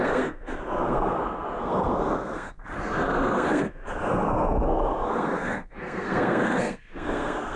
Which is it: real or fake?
fake